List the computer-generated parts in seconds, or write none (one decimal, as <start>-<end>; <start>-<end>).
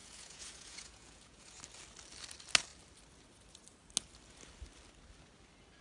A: 0.0-1.6